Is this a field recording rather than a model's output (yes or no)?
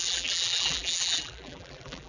no